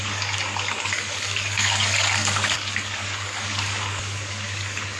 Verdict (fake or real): fake